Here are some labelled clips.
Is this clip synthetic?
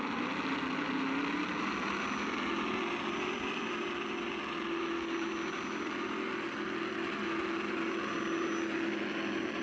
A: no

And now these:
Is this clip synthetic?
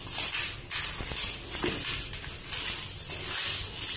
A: no